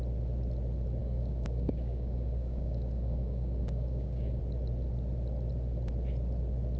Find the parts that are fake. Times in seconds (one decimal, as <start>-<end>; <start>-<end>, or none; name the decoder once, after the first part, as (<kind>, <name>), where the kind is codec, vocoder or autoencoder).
1.0-4.4 (codec, DAC)